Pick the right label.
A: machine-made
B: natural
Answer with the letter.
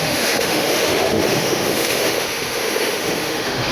A